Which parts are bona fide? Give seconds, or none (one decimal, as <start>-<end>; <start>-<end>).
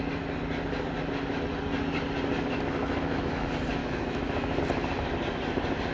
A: 0.0-2.8; 3.4-3.8; 4.6-5.9